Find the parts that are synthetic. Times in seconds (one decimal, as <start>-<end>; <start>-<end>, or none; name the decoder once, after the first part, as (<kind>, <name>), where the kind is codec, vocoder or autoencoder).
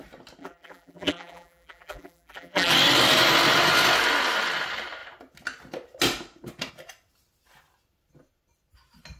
0.4-2.7 (vocoder, BigVGAN v2)